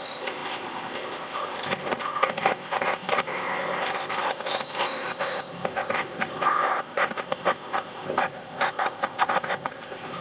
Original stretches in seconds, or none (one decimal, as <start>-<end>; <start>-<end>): none